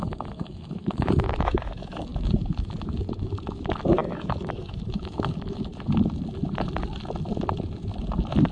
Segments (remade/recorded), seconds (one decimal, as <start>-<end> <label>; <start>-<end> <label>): 0.0-5.7 remade; 5.7-8.5 recorded